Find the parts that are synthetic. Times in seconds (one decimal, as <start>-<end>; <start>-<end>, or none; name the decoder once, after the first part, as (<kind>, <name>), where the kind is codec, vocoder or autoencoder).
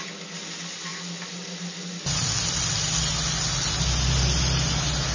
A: none